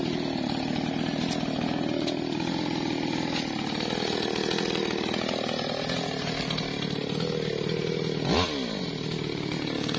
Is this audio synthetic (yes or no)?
no